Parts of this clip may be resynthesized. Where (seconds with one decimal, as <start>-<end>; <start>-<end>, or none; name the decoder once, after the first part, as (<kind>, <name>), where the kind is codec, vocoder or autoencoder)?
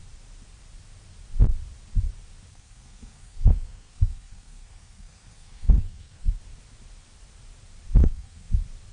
2.5-6.4 (codec, SNAC); 8.0-8.5